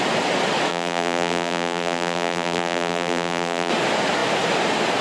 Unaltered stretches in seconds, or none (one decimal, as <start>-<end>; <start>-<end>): 0.0-0.7; 3.7-5.0